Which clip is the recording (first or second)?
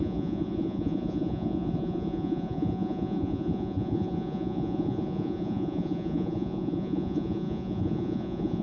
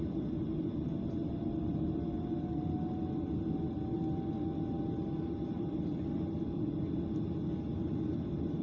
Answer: second